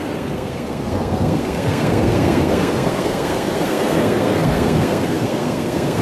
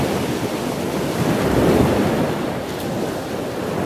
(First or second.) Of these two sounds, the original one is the second